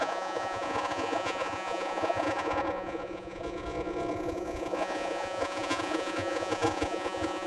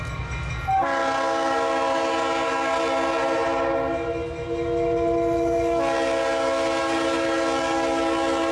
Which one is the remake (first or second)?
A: first